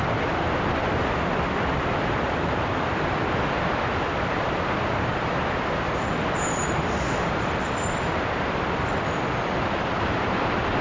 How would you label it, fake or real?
fake